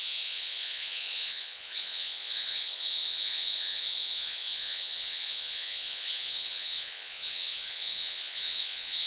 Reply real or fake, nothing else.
fake